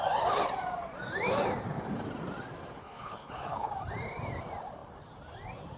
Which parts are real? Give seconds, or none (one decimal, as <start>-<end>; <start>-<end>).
0.0-2.8; 3.7-5.8